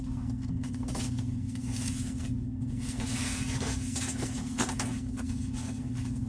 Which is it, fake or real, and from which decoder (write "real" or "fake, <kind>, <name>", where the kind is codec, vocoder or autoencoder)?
fake, codec, SNAC